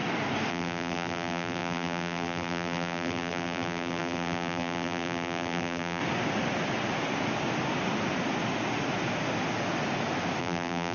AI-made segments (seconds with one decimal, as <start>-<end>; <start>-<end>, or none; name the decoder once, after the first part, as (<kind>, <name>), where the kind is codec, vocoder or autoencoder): 0.5-6.0 (vocoder, BigVGAN v2); 10.4-10.9